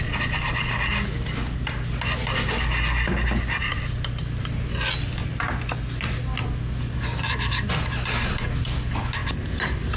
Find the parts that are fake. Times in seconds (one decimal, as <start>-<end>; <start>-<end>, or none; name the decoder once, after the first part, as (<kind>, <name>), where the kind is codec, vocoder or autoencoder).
none